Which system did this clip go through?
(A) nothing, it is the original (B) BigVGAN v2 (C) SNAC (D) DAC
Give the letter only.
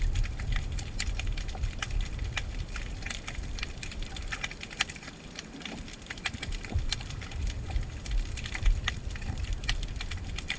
B